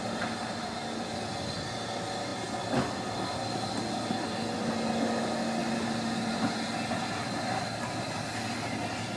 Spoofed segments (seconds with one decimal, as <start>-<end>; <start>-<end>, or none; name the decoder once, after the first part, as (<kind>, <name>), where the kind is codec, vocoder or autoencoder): none